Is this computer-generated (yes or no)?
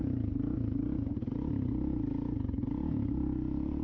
no